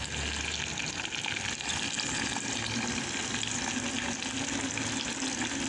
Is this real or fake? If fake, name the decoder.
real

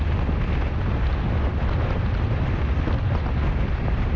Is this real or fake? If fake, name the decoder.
real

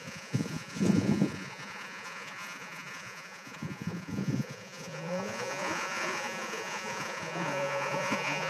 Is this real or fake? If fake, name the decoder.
fake, vocoder, Vocos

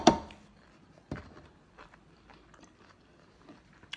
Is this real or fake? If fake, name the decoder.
real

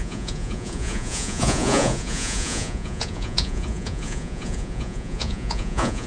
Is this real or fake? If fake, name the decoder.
fake, vocoder, Vocos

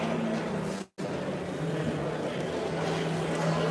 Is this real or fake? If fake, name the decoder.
real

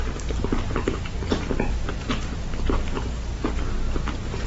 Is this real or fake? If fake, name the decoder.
real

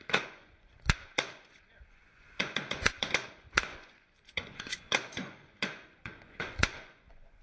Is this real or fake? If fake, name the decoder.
fake, vocoder, Vocos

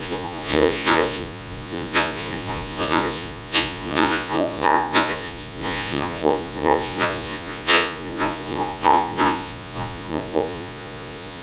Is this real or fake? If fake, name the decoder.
fake, vocoder, Vocos